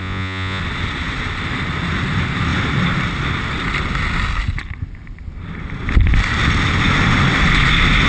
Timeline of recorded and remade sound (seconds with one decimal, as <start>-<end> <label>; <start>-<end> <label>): 0.0-0.6 remade; 0.6-8.1 recorded